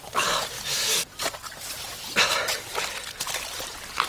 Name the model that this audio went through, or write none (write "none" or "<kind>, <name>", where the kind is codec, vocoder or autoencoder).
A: vocoder, BigVGAN v2